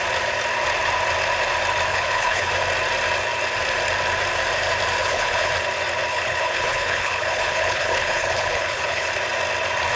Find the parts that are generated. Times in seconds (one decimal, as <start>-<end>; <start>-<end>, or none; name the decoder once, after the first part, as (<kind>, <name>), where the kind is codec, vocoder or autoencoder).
1.9-2.5 (codec, HILCodec); 5.0-5.5; 6.1-9.1